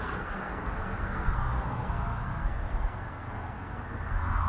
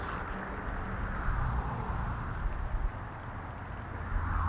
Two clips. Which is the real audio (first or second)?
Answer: second